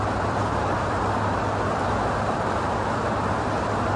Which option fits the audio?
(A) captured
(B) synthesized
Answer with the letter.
B